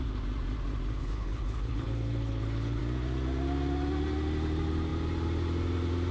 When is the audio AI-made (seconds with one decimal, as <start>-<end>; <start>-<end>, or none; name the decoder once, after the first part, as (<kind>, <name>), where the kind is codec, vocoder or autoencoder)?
1.0-2.8 (codec, HILCodec)